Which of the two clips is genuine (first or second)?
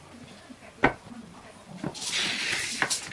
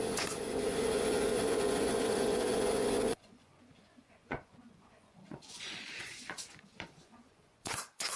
first